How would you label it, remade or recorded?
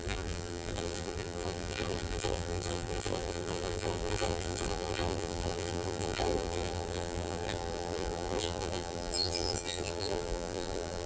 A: remade